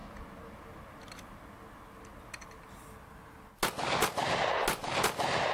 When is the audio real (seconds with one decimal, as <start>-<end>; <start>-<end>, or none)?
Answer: 0.0-5.5